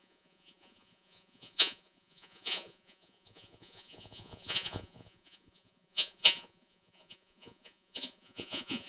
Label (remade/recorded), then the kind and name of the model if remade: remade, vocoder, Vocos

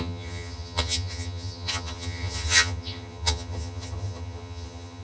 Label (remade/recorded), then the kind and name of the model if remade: remade, vocoder, HiFi-GAN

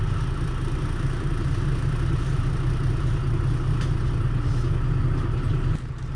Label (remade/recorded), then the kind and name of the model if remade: recorded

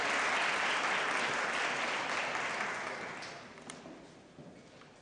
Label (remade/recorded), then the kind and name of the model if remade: recorded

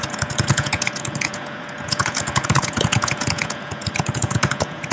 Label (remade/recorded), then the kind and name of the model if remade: remade, vocoder, Vocos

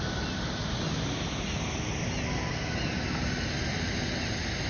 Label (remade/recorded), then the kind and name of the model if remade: recorded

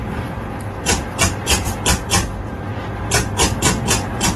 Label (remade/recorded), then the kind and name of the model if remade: recorded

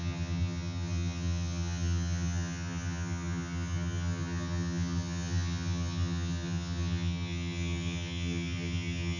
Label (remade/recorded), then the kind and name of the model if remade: remade, vocoder, HiFi-GAN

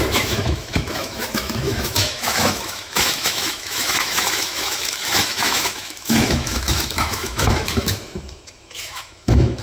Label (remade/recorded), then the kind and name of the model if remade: remade, autoencoder, DAC-VAE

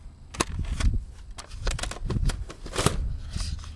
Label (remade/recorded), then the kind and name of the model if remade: recorded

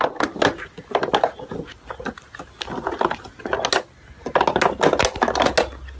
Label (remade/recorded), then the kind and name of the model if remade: recorded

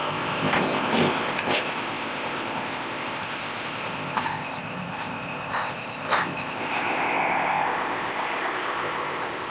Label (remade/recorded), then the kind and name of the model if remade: remade, codec, ZipCodec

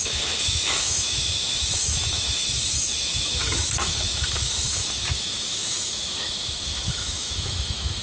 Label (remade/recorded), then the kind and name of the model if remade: remade, autoencoder, DAC-VAE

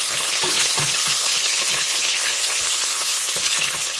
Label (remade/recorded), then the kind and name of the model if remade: remade, codec, HILCodec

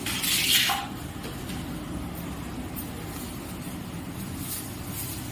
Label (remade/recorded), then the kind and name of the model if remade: recorded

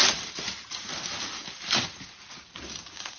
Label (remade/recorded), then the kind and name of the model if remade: remade, vocoder, BigVGAN v2